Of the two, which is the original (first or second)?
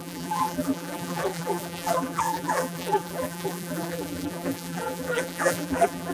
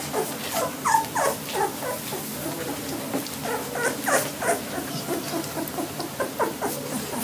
second